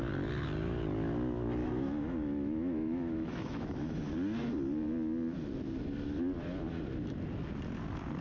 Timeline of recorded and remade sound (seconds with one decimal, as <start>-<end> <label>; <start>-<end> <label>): 0.0-1.6 recorded; 1.6-4.0 remade; 4.0-8.2 recorded